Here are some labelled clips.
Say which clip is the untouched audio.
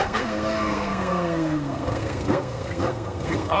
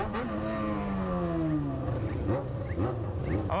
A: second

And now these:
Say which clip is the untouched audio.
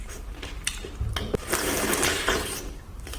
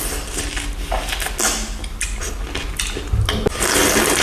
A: second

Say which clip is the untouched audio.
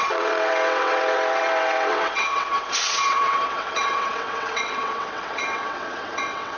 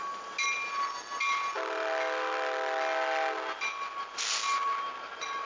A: second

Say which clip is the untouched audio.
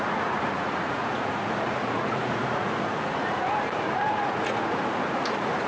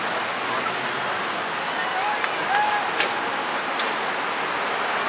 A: second